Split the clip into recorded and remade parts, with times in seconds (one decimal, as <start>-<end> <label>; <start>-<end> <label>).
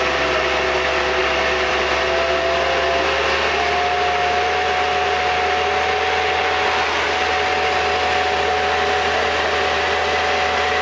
0.0-10.8 recorded